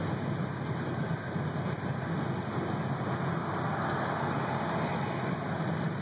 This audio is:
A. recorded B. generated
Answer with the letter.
A